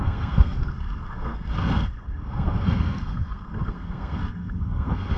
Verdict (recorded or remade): remade